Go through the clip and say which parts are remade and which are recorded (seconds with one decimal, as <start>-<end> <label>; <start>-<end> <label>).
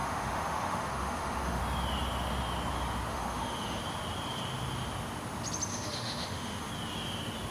0.0-1.6 remade; 1.6-3.1 recorded; 3.1-3.8 remade; 3.8-5.7 recorded; 5.7-6.7 remade; 6.7-7.5 recorded